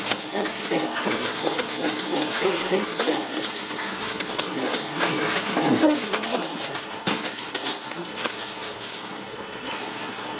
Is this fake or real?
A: fake